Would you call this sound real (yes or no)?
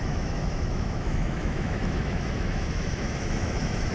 no